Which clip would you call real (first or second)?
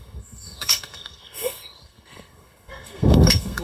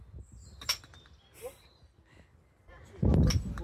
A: second